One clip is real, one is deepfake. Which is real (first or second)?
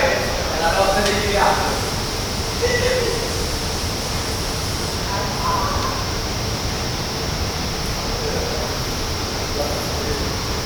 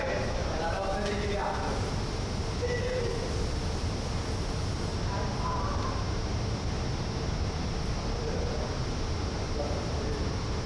second